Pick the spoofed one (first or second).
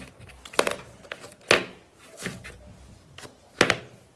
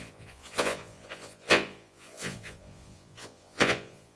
second